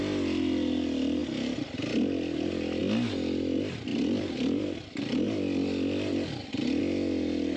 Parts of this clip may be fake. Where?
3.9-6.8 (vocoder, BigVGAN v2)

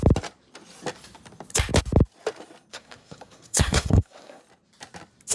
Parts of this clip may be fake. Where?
2.7-4.4 (codec, SNAC)

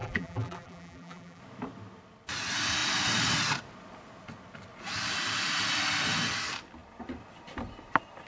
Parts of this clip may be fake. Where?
0.0-1.4 (vocoder, BigVGAN v2)

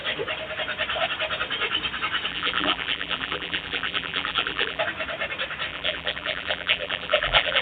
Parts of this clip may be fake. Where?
2.3-4.8 (vocoder, BigVGAN v2); 5.7-7.6

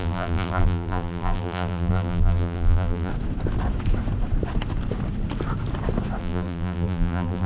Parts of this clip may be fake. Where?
0.0-3.1 (vocoder, BigVGAN v2); 6.2-7.5

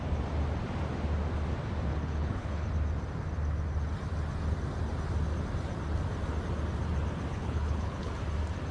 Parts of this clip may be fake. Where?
1.9-2.7 (codec, HILCodec); 7.3-8.1

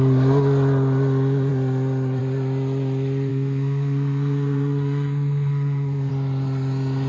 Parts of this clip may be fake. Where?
3.3-6.1 (codec, SNAC)